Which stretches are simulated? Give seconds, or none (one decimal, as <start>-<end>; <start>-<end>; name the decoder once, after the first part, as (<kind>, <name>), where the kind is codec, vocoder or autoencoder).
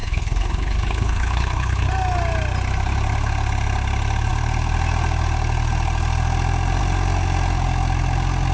0.0-1.9 (codec, HILCodec)